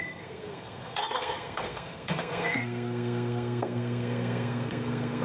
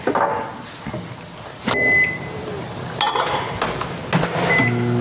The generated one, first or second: first